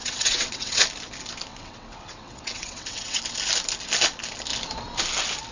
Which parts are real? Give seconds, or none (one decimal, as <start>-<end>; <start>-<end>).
0.8-1.5; 3.2-5.5